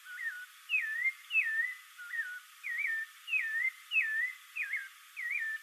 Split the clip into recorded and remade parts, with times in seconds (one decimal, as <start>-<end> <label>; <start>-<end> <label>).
0.0-4.8 recorded; 4.8-5.6 remade